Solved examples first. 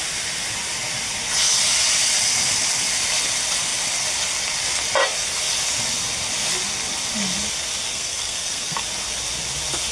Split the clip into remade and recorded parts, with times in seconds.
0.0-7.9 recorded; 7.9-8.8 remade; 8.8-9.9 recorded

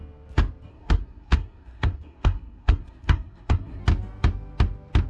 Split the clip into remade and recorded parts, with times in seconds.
0.0-0.7 recorded; 0.7-3.8 remade; 3.8-5.1 recorded

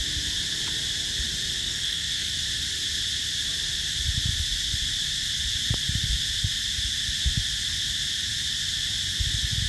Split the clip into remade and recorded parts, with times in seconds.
0.0-1.6 recorded; 1.6-2.3 remade; 2.3-9.7 recorded

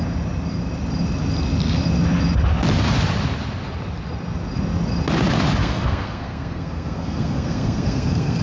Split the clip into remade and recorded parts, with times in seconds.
0.0-5.6 recorded; 5.6-8.4 remade

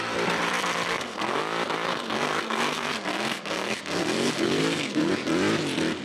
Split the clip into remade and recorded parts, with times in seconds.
0.0-0.9 recorded; 0.9-1.4 remade; 1.4-1.9 recorded; 1.9-5.1 remade; 5.1-6.0 recorded